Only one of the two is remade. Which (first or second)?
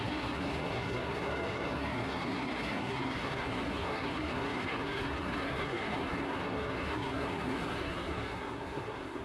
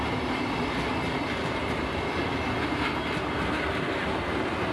first